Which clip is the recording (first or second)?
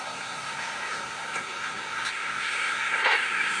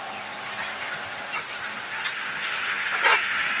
second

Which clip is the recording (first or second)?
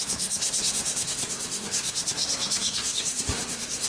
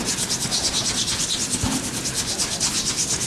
second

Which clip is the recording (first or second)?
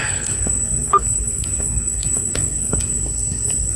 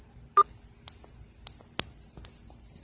second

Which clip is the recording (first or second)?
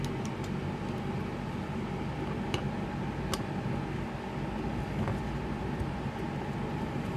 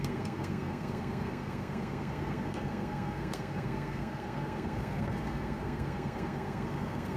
first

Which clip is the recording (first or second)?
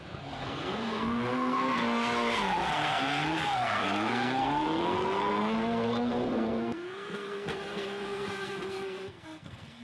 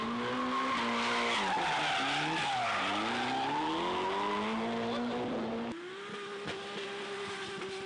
second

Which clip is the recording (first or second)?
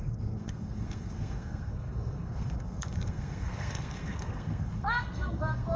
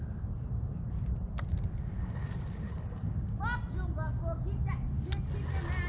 second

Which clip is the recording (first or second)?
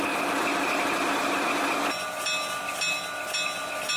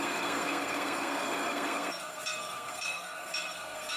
first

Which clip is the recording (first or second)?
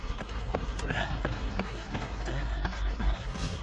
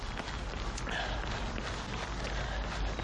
second